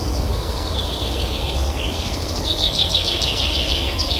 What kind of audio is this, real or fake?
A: fake